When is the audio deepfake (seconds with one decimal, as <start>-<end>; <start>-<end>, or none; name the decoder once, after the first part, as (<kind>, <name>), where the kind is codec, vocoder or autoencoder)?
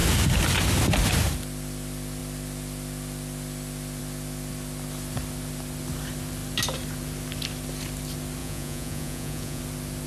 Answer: 8.4-9.6 (vocoder, Vocos)